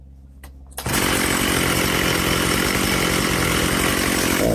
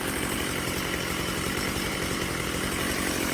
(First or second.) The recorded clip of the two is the first